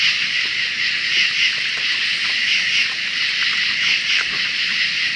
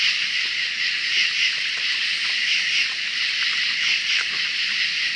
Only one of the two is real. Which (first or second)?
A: first